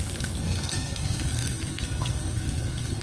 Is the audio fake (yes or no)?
yes